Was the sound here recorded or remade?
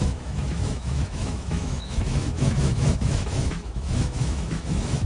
remade